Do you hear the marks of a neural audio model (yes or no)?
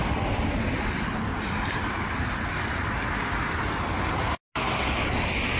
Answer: no